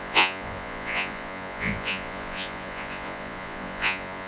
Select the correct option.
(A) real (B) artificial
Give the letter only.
B